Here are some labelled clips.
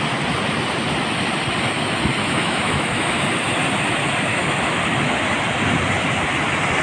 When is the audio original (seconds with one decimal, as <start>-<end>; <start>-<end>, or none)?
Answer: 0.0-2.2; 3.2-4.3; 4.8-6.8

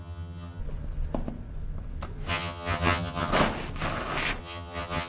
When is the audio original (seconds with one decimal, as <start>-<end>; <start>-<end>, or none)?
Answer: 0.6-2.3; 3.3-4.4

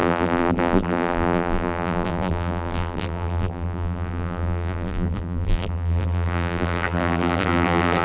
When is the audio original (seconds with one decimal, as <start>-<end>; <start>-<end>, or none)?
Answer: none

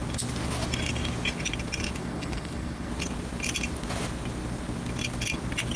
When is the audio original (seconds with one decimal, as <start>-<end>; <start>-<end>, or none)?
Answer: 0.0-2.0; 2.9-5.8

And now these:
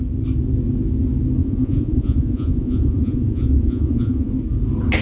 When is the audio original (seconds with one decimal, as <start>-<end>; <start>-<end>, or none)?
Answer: 0.0-1.4; 4.3-5.0

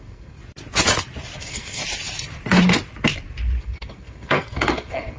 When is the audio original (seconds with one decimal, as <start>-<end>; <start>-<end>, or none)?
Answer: 0.4-1.4; 1.8-3.6

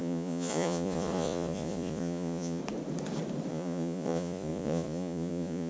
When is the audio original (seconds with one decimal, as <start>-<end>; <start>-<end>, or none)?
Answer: 2.6-3.5